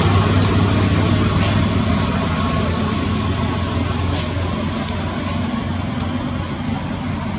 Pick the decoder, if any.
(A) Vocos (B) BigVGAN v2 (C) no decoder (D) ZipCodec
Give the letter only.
C